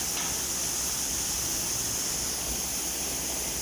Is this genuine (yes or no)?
yes